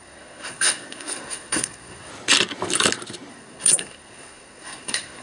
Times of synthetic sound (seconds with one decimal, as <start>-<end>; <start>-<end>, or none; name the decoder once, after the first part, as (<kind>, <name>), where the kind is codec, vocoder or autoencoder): 0.0-2.1 (codec, SNAC); 3.3-5.2